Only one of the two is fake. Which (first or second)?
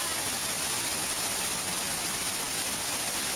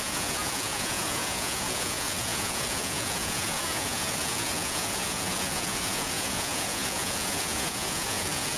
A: second